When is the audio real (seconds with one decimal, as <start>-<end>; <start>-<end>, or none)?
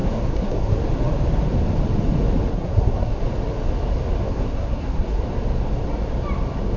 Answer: 0.8-2.5; 3.2-4.2; 5.2-6.8